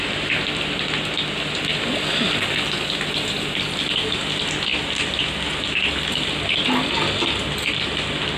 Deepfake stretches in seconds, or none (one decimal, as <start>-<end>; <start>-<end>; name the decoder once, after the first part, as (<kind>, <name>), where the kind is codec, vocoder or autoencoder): none